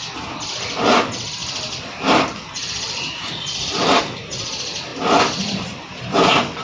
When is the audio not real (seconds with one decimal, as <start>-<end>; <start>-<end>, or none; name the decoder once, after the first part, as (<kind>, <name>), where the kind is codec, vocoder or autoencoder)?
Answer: none